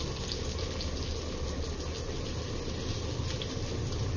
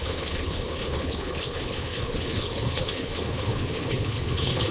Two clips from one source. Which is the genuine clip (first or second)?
first